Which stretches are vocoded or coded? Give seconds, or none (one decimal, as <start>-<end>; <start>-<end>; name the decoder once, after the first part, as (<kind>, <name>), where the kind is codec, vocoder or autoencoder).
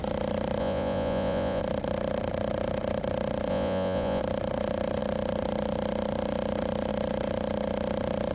0.6-1.6 (vocoder, Vocos); 3.5-4.2